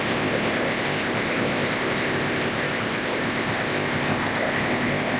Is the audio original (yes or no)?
no